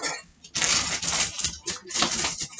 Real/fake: real